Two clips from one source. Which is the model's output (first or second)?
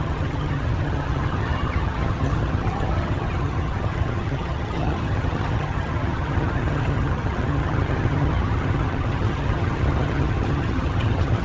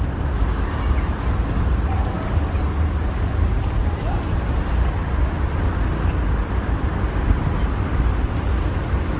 first